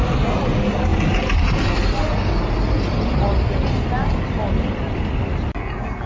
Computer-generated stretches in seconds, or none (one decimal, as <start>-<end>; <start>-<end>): none